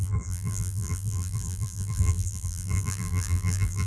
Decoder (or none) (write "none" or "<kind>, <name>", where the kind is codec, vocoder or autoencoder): vocoder, BigVGAN v2